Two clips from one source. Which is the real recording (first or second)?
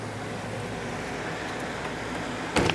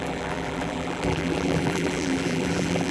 first